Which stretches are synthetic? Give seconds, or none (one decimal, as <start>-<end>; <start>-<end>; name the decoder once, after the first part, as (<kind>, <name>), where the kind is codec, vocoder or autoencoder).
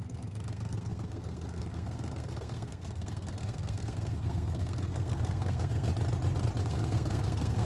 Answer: 0.0-5.9 (codec, SNAC); 6.6-7.7